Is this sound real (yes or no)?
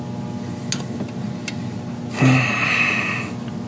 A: yes